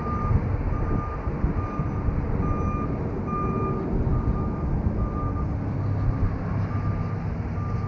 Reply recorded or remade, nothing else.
recorded